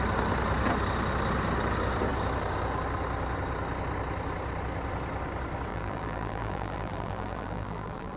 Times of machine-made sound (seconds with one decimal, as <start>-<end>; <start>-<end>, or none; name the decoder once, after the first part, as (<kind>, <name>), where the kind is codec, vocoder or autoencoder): 5.7-8.2 (vocoder, BigVGAN v2)